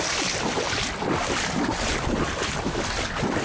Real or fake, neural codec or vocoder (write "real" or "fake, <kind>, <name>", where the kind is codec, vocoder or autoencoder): real